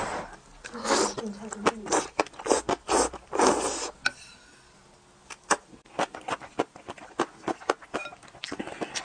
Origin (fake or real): real